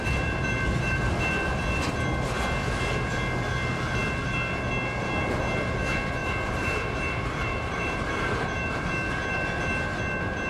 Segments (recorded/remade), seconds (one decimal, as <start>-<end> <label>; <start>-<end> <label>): 0.0-6.2 recorded; 6.2-8.9 remade; 8.9-10.5 recorded